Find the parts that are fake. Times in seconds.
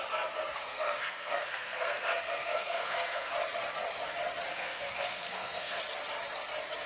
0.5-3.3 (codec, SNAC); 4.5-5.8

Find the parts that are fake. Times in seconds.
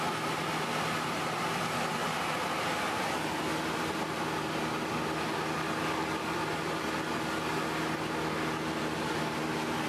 none